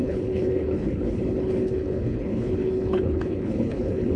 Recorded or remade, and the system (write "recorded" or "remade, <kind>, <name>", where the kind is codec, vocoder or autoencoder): remade, codec, HILCodec